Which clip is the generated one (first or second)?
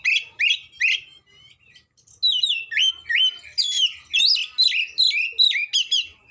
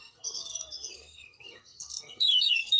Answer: second